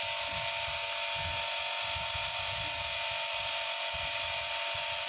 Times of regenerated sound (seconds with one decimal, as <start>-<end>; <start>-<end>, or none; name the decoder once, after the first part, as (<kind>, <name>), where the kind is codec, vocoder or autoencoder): 2.2-5.1 (vocoder, BigVGAN v2)